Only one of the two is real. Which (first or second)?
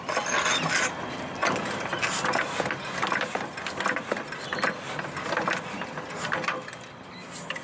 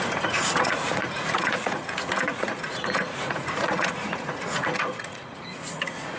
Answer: first